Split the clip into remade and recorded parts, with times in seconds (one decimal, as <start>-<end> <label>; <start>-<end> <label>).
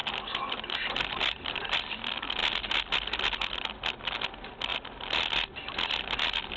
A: 0.0-1.9 remade; 1.9-6.6 recorded